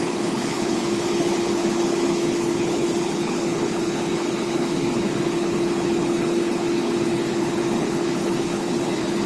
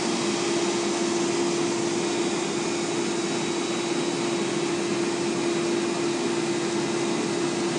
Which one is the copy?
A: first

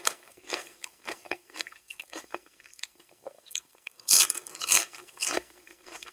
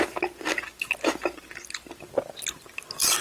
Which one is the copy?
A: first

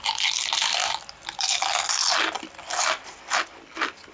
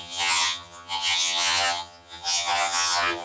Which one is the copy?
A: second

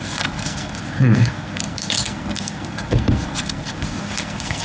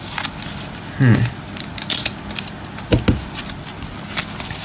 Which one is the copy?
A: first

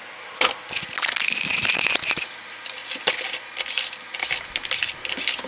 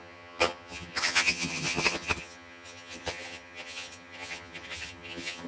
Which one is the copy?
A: second